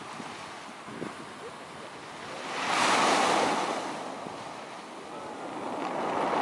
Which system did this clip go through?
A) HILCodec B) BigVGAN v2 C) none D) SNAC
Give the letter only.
C